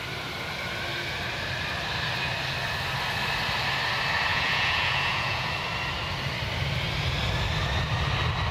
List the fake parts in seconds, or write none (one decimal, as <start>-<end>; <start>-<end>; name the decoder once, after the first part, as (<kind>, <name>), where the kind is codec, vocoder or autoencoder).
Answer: 4.3-5.5 (vocoder, Vocos)